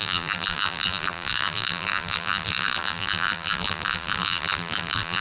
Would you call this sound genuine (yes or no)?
no